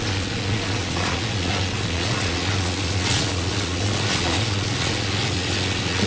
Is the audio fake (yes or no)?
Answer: yes